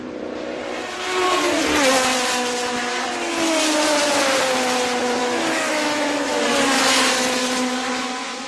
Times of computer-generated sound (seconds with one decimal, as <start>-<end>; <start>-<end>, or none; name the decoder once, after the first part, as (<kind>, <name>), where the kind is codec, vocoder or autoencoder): 5.2-6.4 (autoencoder, DAC-VAE)